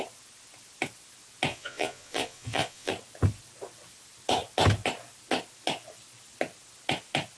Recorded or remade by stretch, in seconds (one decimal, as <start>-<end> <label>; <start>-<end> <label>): 0.0-1.5 recorded; 1.5-2.9 remade; 2.9-7.4 recorded